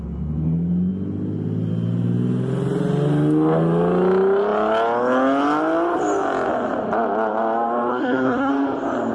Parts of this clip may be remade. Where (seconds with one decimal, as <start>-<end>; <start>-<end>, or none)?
7.9-8.5